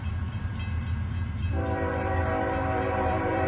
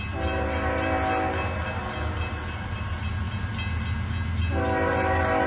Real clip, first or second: second